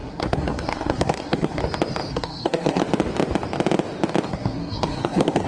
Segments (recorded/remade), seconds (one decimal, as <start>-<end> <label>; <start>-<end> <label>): 0.0-1.6 remade; 1.6-2.1 recorded; 2.1-2.8 remade; 2.8-4.3 recorded; 4.3-5.5 remade

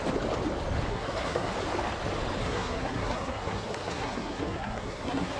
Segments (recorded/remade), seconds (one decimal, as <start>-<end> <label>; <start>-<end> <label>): 0.0-0.9 recorded; 0.9-1.5 remade; 1.5-2.4 recorded; 2.4-5.4 remade

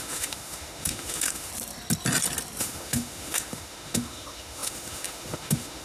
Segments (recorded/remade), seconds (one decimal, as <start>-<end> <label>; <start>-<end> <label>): 0.0-1.5 remade; 1.5-2.6 recorded; 2.6-5.8 remade

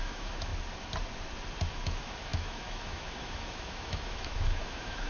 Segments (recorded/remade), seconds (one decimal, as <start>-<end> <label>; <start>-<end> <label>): 0.0-0.5 remade; 0.5-1.7 recorded; 1.7-5.1 remade

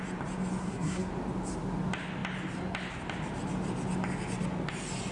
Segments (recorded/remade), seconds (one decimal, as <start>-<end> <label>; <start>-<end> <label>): 0.0-0.6 recorded; 0.6-1.1 remade; 1.1-5.1 recorded